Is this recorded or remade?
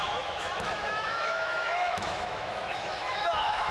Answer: remade